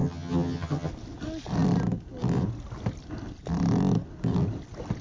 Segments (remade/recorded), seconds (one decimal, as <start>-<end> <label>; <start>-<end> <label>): 0.0-0.9 remade; 0.9-5.0 recorded